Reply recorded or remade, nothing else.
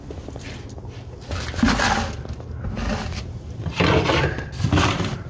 recorded